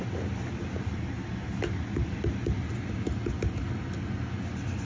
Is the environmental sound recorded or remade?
recorded